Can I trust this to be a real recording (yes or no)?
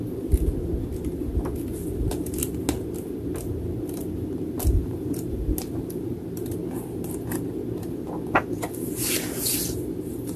yes